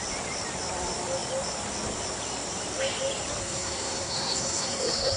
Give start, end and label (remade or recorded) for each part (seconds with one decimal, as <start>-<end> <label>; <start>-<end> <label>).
0.0-3.4 recorded; 3.4-5.2 remade